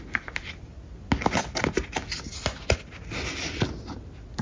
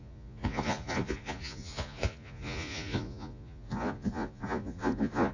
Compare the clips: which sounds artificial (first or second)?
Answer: second